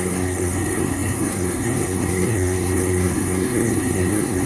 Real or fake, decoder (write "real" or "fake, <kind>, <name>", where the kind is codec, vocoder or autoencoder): fake, codec, SNAC